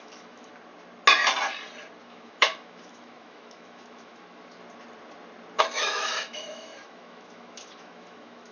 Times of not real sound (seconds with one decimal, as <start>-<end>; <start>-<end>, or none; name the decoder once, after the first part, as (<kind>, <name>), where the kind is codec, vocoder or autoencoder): 0.0-0.5 (autoencoder, DAC-VAE); 2.0-4.6; 5.6-8.5